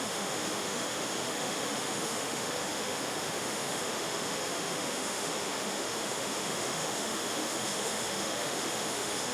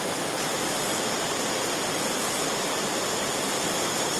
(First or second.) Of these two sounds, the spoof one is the first